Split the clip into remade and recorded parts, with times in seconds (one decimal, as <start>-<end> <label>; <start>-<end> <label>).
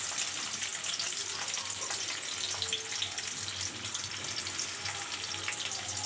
0.0-6.1 recorded